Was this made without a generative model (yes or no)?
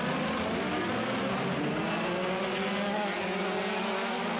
yes